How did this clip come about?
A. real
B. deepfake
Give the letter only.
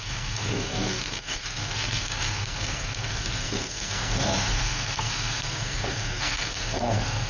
B